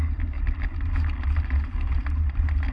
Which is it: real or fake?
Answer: fake